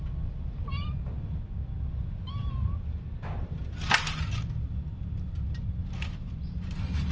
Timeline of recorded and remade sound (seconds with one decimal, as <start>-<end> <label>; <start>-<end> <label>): 0.0-7.1 recorded